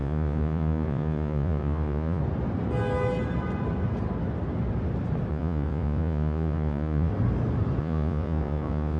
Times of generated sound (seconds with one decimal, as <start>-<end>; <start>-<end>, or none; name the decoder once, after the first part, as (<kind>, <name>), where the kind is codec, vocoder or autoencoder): 0.0-2.2 (vocoder, Vocos); 5.3-7.1; 7.8-9.0